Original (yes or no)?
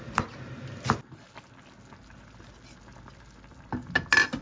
yes